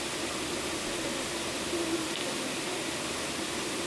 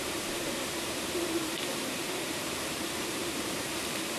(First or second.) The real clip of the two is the first